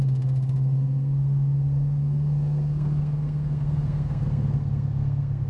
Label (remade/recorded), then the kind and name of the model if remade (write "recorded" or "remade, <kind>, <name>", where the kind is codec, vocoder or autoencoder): remade, codec, SNAC